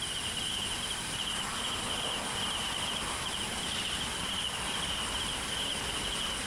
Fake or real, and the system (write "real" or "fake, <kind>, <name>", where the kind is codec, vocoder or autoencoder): fake, vocoder, BigVGAN v2